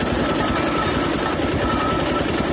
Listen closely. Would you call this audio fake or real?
real